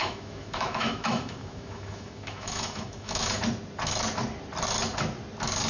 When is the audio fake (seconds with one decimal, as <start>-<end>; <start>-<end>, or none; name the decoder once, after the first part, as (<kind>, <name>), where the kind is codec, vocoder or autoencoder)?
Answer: 0.0-3.4 (autoencoder, DAC-VAE)